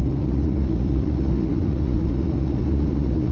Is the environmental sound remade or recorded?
remade